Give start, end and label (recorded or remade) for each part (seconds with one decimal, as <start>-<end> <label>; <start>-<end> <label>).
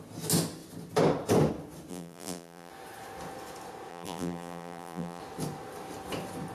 0.0-1.9 recorded; 1.9-2.7 remade; 2.7-3.9 recorded; 3.9-5.2 remade; 5.2-6.5 recorded